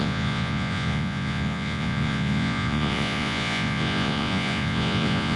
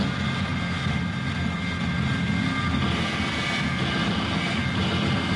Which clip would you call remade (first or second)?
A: first